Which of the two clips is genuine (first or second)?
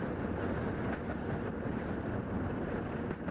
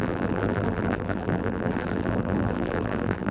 first